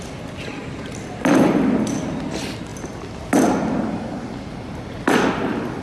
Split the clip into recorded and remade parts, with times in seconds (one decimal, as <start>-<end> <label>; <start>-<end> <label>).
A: 0.0-5.8 recorded